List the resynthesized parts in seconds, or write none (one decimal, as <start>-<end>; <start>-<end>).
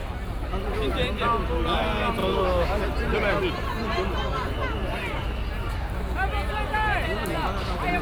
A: 2.2-2.8